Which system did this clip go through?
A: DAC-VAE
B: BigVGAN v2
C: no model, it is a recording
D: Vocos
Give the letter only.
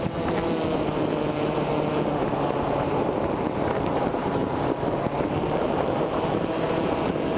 B